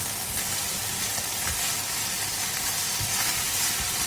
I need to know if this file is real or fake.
real